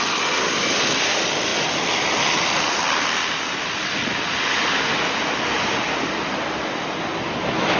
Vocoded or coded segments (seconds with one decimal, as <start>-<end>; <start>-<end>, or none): none